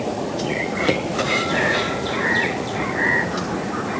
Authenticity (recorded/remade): remade